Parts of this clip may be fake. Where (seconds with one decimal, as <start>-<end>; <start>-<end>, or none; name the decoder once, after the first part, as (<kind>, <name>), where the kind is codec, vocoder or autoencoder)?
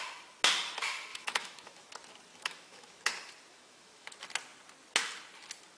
1.1-1.9 (autoencoder, DAC-VAE); 2.3-3.1; 3.5-4.1